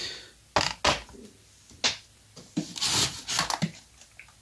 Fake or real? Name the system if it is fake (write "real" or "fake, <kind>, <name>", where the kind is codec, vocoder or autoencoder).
real